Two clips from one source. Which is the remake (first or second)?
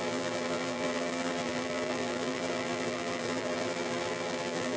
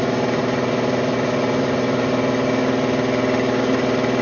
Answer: first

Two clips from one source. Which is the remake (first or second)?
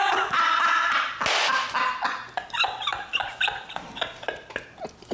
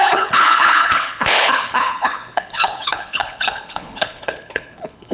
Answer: second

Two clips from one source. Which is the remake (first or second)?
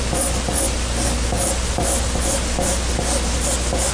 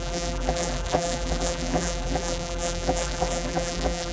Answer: second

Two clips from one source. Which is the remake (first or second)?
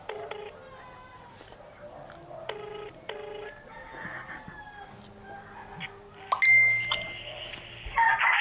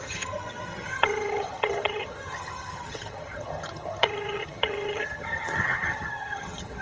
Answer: second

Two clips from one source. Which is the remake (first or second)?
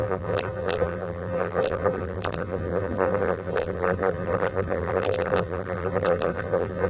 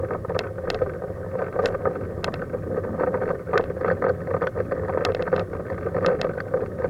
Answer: first